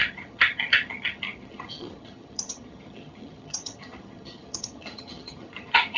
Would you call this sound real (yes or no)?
no